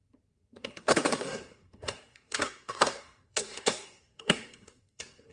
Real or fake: fake